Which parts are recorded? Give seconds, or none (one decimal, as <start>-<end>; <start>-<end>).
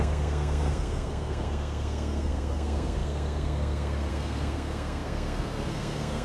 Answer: none